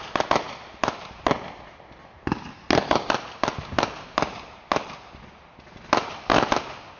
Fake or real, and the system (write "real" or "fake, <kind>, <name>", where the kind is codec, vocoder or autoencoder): real